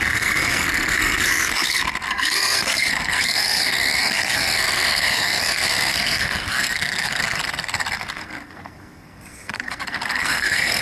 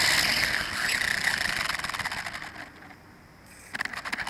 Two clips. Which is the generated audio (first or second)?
first